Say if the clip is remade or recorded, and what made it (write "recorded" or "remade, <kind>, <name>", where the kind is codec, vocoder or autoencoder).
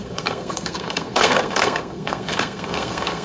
remade, codec, SNAC